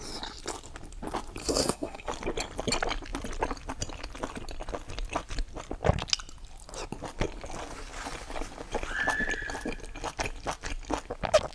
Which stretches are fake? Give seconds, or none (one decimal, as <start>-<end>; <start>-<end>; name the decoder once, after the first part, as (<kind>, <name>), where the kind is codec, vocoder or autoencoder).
1.4-2.1 (codec, SNAC)

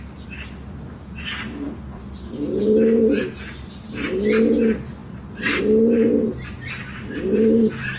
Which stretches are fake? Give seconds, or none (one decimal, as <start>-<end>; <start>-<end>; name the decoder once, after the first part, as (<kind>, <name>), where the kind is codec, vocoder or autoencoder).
5.0-5.6 (vocoder, BigVGAN v2)

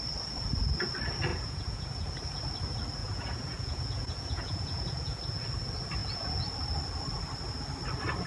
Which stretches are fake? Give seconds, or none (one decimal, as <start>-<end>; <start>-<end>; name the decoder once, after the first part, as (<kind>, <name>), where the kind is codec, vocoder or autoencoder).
1.3-2.1 (vocoder, Vocos); 3.0-5.2; 6.0-6.5

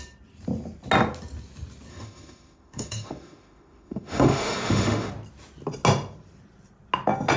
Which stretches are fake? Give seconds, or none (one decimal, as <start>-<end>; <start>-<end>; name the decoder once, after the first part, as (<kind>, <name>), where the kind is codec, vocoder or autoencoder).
1.9-5.1 (autoencoder, DAC-VAE)